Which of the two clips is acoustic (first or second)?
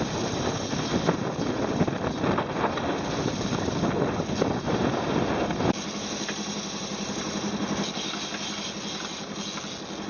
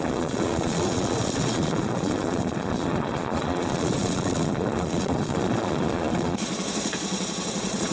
first